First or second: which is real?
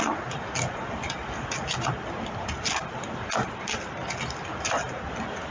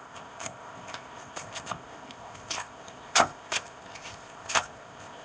first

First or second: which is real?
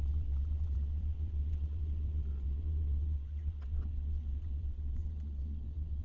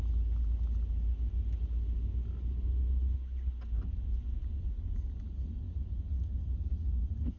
second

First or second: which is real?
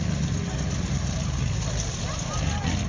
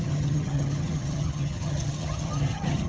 first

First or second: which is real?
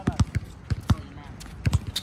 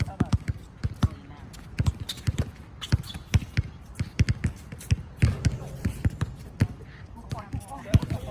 first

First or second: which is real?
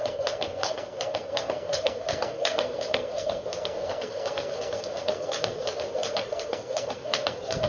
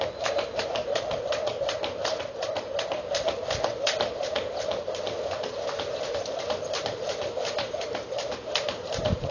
second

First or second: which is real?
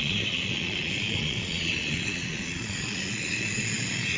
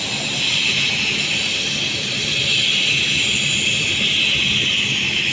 second